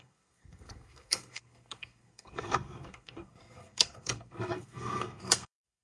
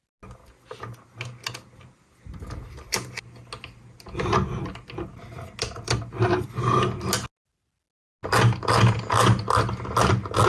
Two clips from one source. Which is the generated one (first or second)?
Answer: first